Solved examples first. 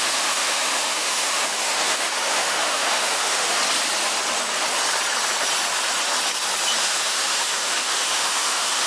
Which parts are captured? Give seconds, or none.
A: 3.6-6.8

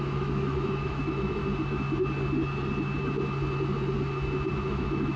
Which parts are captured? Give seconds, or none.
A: 1.4-4.5

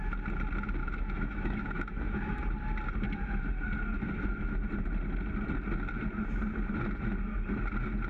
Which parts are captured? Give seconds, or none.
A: 0.0-0.8; 2.4-8.1

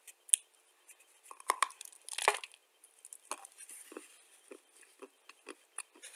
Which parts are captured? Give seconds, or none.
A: 0.0-6.2

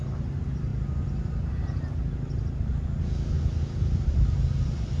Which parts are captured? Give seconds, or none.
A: 0.0-5.0

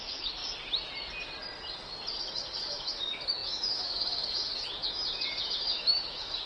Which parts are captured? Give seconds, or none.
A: 0.4-2.2

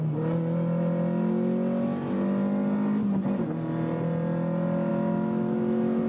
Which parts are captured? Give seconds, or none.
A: 0.0-4.9